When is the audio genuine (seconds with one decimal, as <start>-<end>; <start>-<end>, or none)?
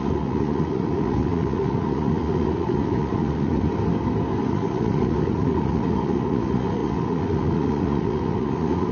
3.7-4.4